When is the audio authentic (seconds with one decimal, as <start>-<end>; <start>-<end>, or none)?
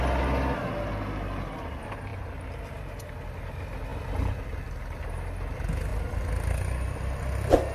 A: 0.0-2.1; 3.1-7.7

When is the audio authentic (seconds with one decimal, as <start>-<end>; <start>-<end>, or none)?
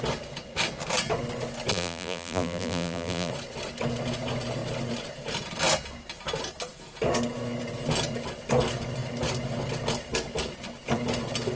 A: 0.0-1.7; 3.3-11.6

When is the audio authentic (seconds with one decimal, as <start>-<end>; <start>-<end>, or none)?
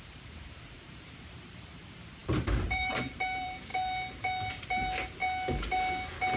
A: 3.7-4.5; 5.2-6.4